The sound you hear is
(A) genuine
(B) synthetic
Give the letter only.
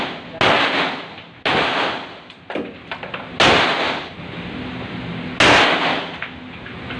A